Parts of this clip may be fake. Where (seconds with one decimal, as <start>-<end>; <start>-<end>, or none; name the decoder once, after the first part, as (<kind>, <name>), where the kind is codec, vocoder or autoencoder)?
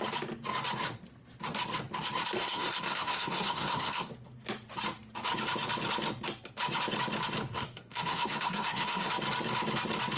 2.4-4.1 (codec, SNAC); 7.5-9.1